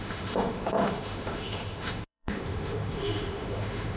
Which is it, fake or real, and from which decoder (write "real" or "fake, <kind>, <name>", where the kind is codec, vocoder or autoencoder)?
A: fake, autoencoder, DAC-VAE